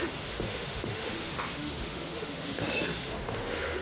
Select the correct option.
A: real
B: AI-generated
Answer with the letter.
B